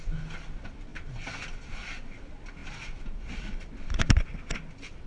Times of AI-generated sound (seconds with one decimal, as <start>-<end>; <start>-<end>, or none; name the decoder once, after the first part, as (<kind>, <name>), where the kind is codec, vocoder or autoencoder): none